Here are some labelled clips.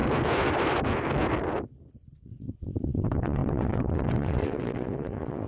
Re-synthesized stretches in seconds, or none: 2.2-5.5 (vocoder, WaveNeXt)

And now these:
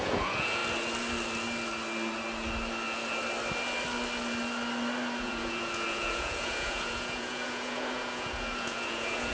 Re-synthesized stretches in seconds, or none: 0.0-0.6 (vocoder, Vocos); 5.2-9.3

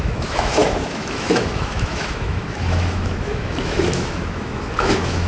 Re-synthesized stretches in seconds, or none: 0.0-5.3 (autoencoder, DAC-VAE)

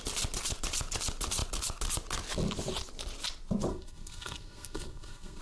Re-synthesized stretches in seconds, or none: 3.7-5.4 (codec, SNAC)

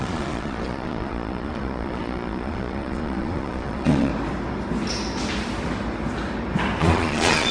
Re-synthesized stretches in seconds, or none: 0.0-4.1 (vocoder, Vocos); 6.8-7.5

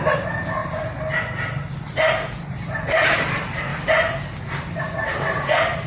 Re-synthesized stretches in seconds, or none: 0.0-0.6 (vocoder, BigVGAN v2); 2.4-3.7; 4.8-5.9

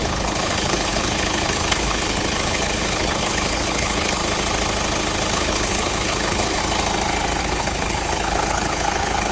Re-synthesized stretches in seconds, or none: 0.0-4.2 (codec, HILCodec); 5.3-6.6; 7.4-9.3